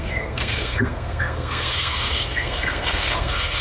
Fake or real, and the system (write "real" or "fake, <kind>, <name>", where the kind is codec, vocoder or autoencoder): fake, codec, SNAC